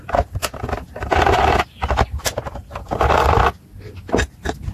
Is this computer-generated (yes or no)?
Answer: no